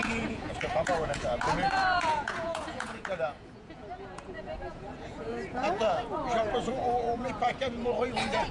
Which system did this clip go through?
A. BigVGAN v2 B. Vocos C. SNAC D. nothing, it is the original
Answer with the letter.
B